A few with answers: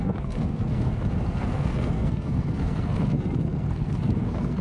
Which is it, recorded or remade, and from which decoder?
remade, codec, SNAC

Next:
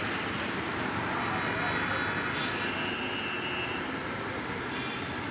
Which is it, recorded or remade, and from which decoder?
recorded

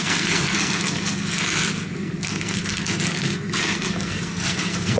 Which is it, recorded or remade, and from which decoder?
remade, codec, SNAC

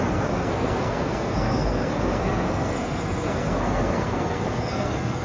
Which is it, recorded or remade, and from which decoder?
remade, codec, SNAC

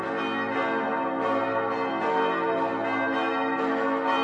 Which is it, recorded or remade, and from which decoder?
recorded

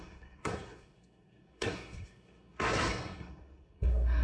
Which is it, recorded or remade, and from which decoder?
remade, codec, SNAC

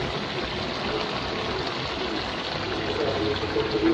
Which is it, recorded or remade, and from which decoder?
recorded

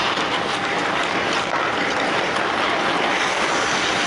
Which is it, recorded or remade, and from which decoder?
recorded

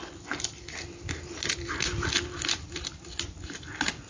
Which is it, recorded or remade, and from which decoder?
recorded